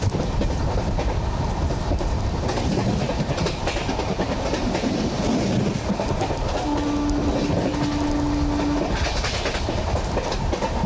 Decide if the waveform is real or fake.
real